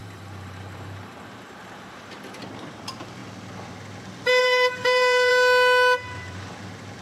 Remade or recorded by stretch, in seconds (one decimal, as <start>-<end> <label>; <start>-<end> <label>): 0.0-2.4 remade; 2.4-4.4 recorded; 4.4-5.3 remade; 5.3-7.0 recorded